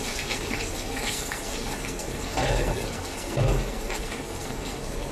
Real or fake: fake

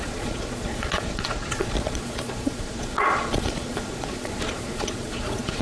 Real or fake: fake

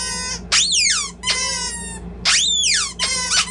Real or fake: real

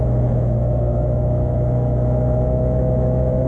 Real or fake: fake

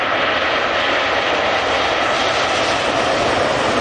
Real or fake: real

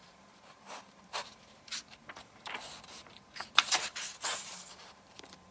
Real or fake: fake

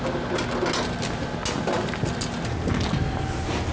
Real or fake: real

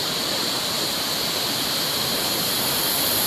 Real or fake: real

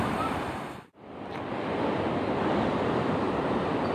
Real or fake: real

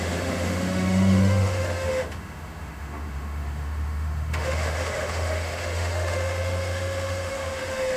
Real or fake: fake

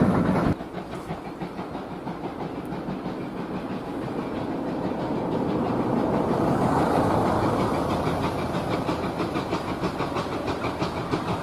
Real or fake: real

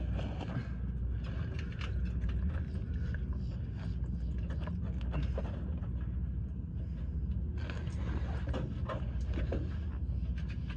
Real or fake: real